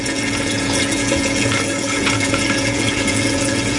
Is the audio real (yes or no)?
no